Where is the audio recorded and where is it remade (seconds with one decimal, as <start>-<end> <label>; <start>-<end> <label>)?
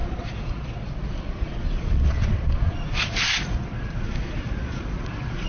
0.0-5.5 remade